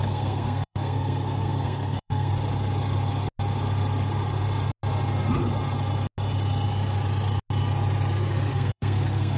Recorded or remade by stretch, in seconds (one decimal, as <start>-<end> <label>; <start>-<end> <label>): 0.0-2.3 remade; 2.3-8.5 recorded; 8.5-9.4 remade